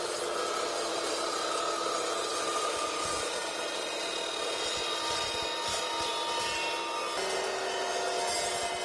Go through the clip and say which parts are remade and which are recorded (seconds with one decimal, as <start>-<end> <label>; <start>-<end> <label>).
0.0-0.9 recorded; 0.9-1.5 remade; 1.5-2.3 recorded; 2.3-4.1 remade; 4.1-8.8 recorded

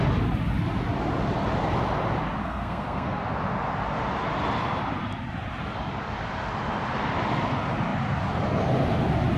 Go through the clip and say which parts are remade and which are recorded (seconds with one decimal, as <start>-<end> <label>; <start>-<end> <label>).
0.0-2.4 recorded; 2.4-3.2 remade; 3.2-9.4 recorded

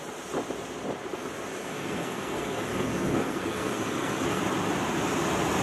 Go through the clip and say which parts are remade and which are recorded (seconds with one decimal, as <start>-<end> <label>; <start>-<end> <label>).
0.0-1.5 recorded; 1.5-4.4 remade; 4.4-5.6 recorded